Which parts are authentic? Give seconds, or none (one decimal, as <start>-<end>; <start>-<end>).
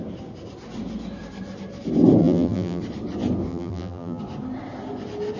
0.0-2.2; 2.8-3.5; 4.2-5.4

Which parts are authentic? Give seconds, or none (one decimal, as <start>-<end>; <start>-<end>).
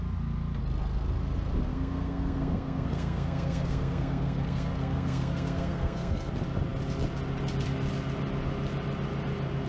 0.0-1.7; 6.3-9.7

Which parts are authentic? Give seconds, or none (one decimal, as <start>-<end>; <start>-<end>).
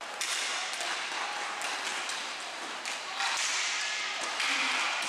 0.0-5.1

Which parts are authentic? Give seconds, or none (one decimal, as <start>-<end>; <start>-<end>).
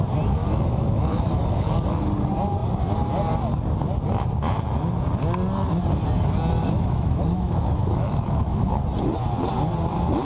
0.0-0.4; 2.0-6.6; 8.8-10.2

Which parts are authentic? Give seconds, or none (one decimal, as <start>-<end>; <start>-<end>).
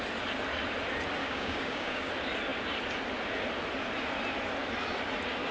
0.0-1.2; 2.1-5.5